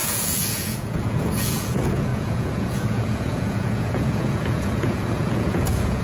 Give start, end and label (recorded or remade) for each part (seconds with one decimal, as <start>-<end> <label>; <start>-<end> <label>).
0.0-6.0 remade